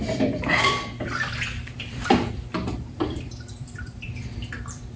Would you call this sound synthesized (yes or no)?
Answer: yes